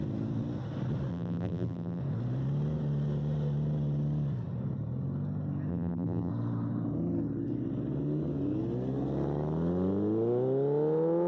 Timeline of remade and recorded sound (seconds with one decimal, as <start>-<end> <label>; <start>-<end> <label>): 0.0-1.1 recorded; 1.1-2.0 remade; 2.0-5.7 recorded; 5.7-6.3 remade; 6.3-11.3 recorded